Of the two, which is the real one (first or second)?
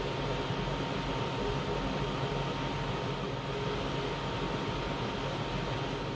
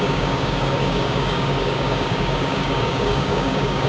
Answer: first